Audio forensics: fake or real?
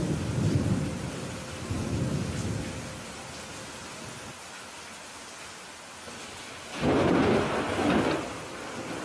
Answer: real